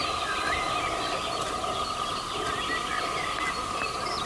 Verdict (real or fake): real